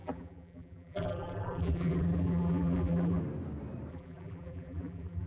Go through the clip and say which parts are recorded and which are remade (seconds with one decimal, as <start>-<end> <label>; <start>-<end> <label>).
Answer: 0.0-3.2 remade; 3.2-3.9 recorded; 3.9-5.3 remade